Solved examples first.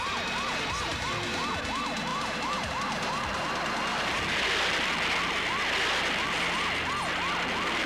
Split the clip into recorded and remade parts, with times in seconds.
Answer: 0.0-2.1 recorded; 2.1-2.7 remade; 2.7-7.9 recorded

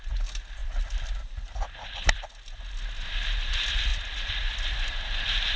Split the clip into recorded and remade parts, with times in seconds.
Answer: 0.0-0.6 recorded; 0.6-2.3 remade; 2.3-3.9 recorded; 3.9-5.6 remade